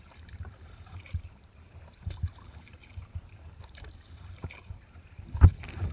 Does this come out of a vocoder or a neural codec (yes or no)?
yes